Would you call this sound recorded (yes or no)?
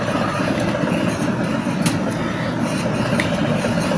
yes